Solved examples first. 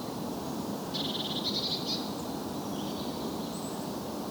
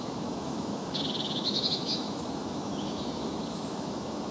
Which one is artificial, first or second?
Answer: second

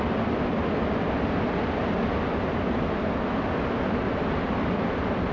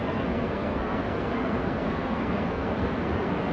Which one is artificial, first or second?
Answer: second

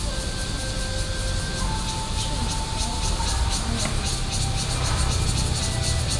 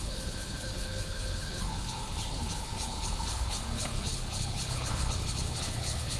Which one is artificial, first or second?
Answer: second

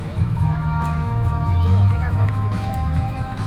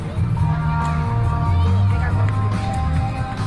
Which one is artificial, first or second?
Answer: first